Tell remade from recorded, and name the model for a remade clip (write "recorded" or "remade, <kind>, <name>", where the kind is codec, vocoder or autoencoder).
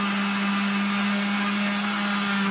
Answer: recorded